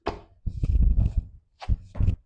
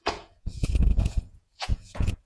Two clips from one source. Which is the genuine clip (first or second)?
first